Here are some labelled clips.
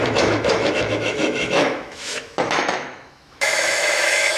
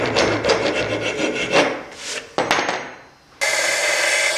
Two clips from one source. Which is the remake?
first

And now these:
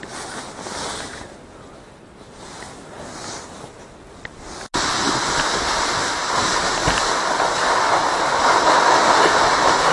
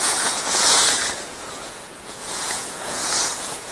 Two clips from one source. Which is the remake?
second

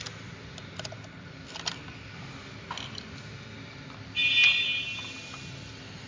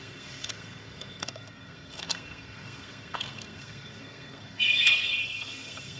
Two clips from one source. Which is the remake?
second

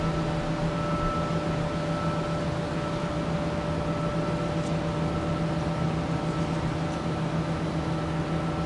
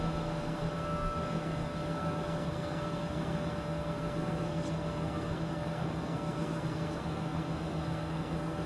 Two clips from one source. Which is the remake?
second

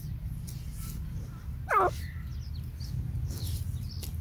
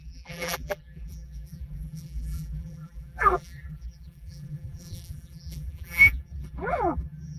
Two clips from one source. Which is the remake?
second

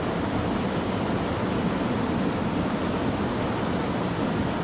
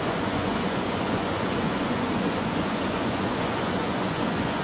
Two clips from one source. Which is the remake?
second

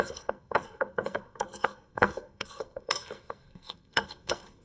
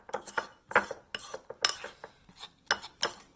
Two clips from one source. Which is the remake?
first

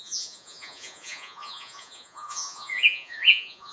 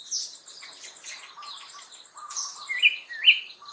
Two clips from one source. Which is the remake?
first